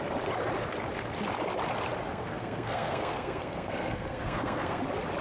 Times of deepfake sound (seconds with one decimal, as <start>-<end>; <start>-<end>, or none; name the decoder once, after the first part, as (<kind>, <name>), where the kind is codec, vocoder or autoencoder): 2.1-4.8 (codec, SNAC)